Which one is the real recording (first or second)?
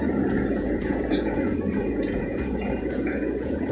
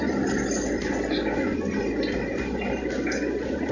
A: second